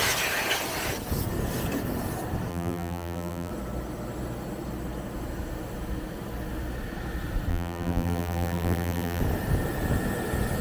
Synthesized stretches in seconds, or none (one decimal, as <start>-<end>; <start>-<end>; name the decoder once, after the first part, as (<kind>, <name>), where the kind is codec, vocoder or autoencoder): 2.5-3.5 (vocoder, BigVGAN v2); 7.5-9.2